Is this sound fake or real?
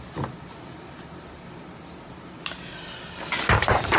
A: real